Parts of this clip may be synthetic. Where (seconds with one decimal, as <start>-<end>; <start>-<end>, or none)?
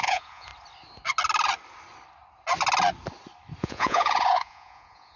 0.0-0.5; 3.6-5.2